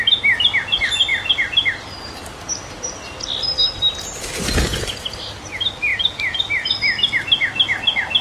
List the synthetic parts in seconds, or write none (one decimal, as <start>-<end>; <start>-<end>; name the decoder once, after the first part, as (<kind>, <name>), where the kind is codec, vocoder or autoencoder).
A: 1.1-5.5 (vocoder, BigVGAN v2); 5.9-6.5